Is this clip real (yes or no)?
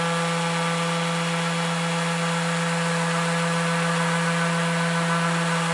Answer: yes